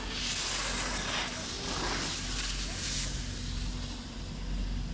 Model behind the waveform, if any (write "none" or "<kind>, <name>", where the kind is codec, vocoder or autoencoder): none